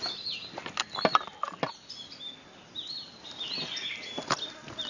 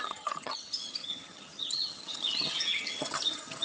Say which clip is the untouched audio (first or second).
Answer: first